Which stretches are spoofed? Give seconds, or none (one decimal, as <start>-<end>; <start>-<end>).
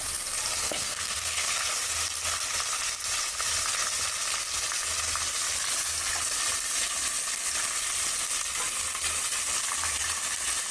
0.6-1.7